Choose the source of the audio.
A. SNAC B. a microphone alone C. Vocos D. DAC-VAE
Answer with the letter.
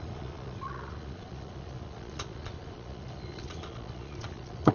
C